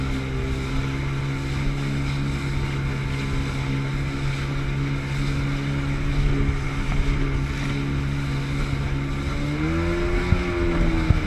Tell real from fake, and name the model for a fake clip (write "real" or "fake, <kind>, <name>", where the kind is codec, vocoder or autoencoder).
real